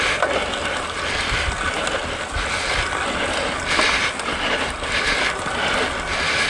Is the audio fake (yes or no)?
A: no